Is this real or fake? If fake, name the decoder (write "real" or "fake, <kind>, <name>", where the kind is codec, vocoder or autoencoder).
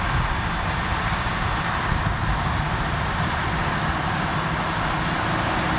real